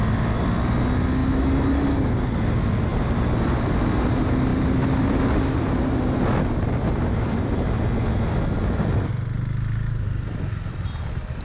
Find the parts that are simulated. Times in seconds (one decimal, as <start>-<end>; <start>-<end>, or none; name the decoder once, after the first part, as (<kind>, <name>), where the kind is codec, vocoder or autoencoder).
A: none